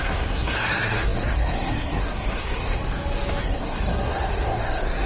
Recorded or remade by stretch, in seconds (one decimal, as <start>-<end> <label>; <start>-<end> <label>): 0.0-2.8 remade; 2.8-3.4 recorded; 3.4-5.1 remade